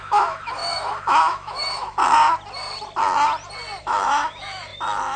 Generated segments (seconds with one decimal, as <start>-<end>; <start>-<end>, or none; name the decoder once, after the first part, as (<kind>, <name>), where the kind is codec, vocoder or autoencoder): 0.0-2.0 (autoencoder, DAC-VAE); 3.8-4.7